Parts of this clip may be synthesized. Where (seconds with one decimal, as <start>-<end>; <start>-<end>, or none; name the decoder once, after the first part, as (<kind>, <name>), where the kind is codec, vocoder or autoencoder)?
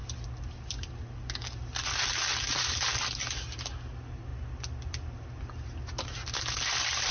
none